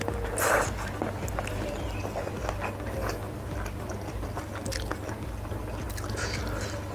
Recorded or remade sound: recorded